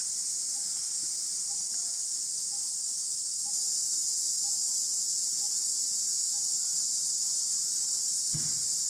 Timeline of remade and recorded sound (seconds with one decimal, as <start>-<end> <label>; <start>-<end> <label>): 0.0-2.6 remade; 2.6-3.6 recorded; 3.6-7.0 remade; 7.0-8.9 recorded